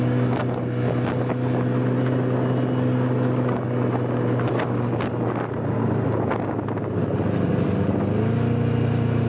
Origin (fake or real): real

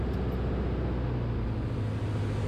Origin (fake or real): real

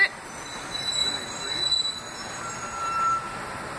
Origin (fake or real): real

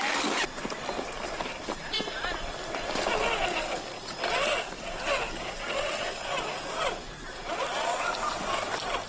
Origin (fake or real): real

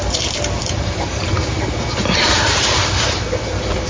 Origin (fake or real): fake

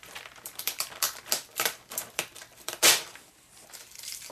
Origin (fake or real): fake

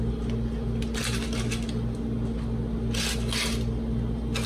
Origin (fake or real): real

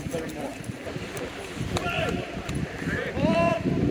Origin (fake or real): fake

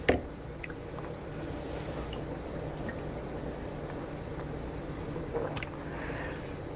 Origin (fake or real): fake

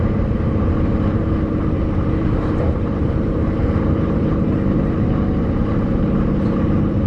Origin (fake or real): fake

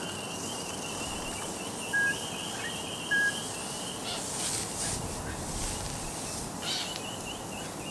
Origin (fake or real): real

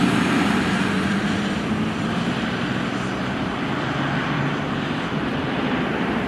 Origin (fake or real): fake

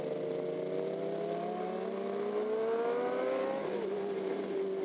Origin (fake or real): real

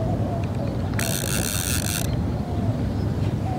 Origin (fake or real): real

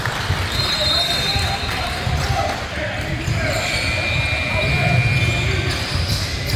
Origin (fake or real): real